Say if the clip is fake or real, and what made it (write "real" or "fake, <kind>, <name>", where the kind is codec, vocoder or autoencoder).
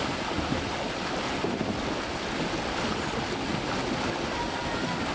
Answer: real